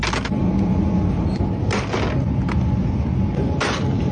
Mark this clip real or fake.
real